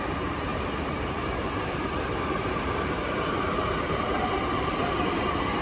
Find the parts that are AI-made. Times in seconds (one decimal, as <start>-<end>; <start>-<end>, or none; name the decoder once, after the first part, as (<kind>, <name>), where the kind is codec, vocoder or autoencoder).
0.0-5.6 (vocoder, BigVGAN v2)